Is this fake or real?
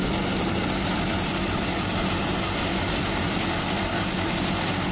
real